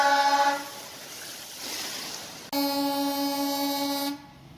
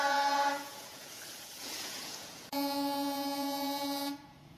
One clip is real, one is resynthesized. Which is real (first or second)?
first